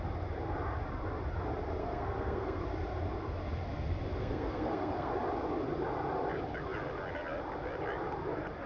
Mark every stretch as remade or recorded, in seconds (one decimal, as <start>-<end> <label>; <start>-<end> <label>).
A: 0.0-1.8 recorded; 1.8-2.6 remade; 2.6-4.2 recorded; 4.2-5.1 remade; 5.1-8.7 recorded